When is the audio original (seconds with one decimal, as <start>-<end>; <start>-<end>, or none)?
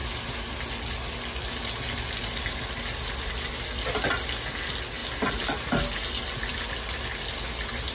0.0-7.9